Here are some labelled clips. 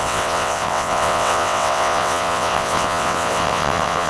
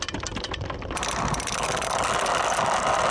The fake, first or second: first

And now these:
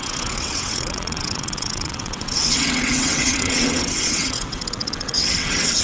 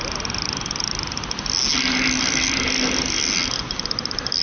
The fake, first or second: first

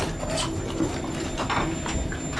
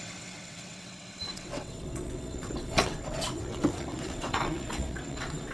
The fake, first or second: second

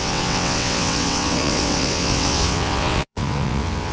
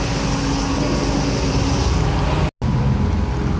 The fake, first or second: first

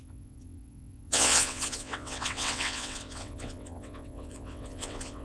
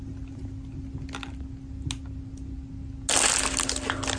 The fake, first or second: first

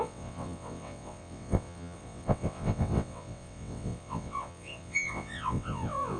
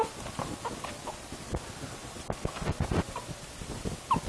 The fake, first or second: first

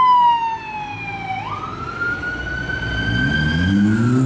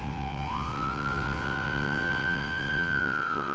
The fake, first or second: second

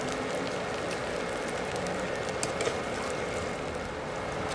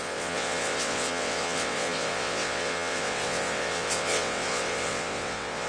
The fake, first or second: second